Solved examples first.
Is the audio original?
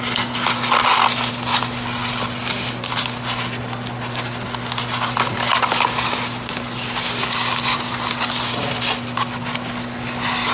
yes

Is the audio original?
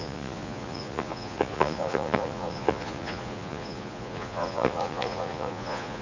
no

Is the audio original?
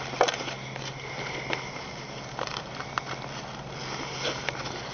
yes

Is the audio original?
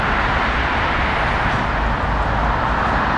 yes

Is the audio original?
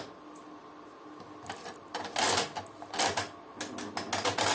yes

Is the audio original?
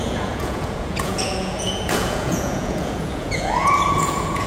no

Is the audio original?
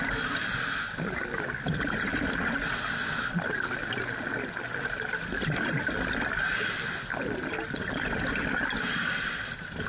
yes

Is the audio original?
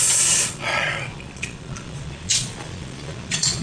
no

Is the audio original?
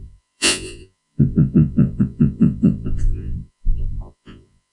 no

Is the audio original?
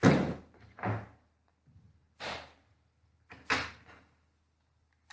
yes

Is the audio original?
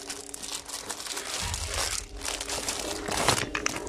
yes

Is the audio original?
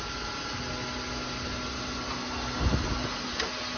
yes